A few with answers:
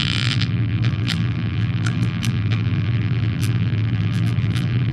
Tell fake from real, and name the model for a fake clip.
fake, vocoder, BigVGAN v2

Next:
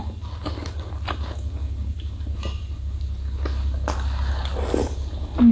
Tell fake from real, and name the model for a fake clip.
real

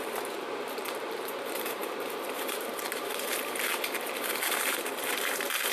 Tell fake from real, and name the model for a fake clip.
fake, vocoder, BigVGAN v2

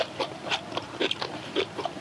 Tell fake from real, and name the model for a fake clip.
fake, vocoder, BigVGAN v2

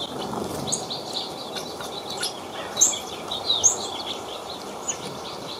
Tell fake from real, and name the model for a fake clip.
real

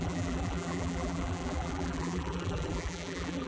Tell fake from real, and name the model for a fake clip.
fake, vocoder, BigVGAN v2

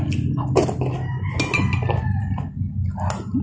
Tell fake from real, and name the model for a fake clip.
real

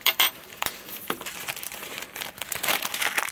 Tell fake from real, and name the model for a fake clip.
fake, vocoder, BigVGAN v2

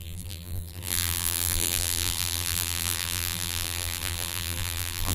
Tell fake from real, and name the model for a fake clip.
fake, vocoder, BigVGAN v2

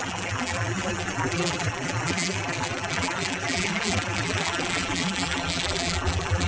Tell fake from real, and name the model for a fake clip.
fake, vocoder, BigVGAN v2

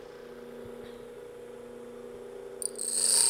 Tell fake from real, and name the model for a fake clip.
real